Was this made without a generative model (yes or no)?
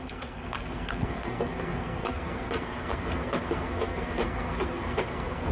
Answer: no